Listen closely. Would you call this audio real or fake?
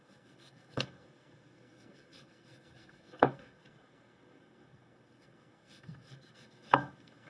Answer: fake